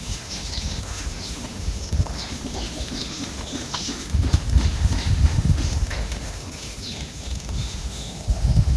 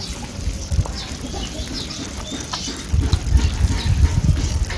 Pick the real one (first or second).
second